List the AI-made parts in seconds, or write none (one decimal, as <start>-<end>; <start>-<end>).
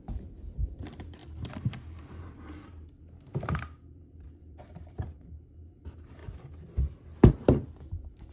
0.0-6.2; 7.3-8.3